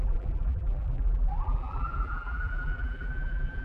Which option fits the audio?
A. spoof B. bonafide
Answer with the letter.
A